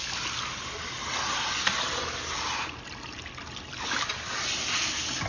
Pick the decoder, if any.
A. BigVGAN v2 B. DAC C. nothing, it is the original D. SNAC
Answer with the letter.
C